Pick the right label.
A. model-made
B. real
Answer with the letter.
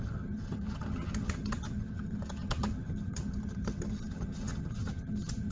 A